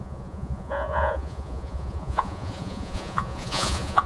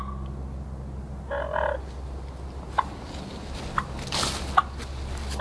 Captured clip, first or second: second